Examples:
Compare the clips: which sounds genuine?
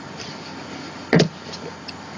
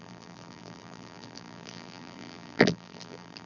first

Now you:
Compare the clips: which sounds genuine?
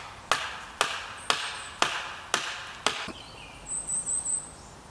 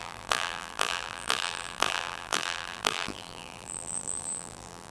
first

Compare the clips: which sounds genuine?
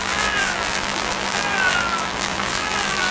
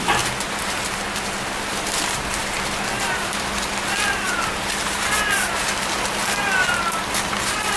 second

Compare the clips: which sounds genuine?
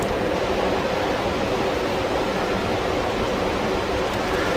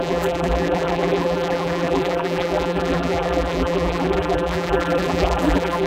first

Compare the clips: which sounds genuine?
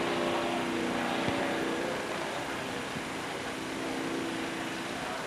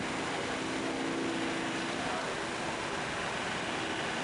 second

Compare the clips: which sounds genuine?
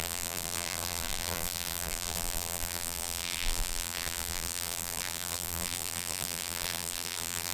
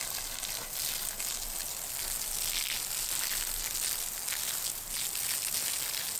second